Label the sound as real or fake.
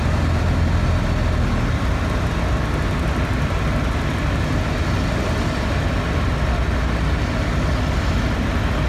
real